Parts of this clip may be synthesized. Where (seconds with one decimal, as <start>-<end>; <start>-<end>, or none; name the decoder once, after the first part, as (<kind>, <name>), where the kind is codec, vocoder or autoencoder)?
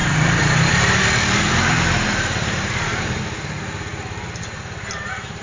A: 0.0-3.2 (vocoder, BigVGAN v2); 3.9-4.9